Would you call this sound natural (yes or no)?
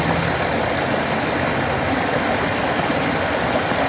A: yes